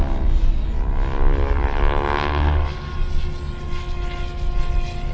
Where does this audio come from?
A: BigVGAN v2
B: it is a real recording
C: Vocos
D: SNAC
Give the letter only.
B